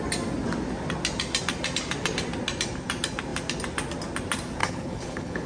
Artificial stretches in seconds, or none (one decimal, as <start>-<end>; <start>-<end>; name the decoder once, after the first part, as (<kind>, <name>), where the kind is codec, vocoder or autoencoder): 4.6-5.5 (codec, HILCodec)